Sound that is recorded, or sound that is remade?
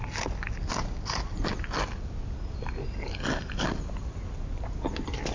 recorded